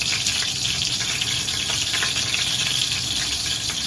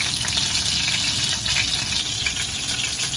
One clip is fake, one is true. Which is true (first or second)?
second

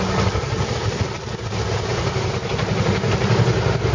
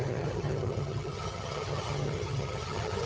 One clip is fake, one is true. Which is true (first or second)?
first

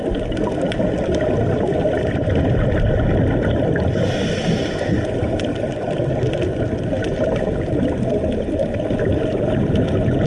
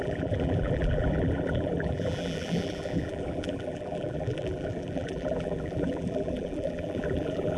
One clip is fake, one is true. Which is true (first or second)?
first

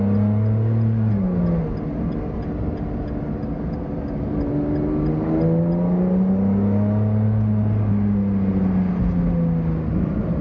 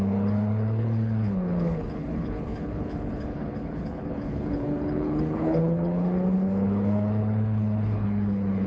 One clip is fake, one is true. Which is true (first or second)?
first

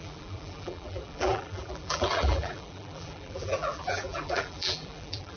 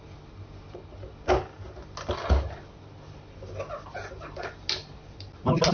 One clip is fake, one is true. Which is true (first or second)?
second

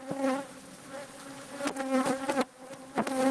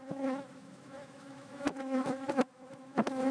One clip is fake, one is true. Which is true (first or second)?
first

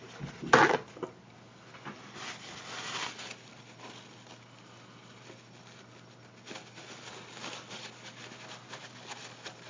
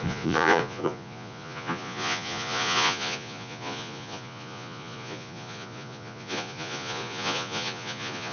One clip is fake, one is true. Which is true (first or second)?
first